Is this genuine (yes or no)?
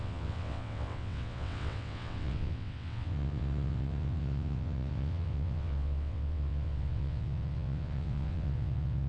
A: no